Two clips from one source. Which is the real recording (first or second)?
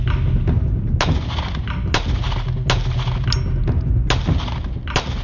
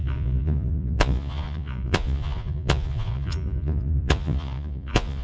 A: first